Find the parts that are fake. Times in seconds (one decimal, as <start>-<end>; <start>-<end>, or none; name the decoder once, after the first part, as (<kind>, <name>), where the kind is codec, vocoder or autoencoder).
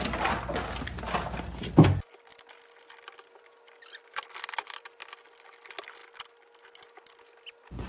none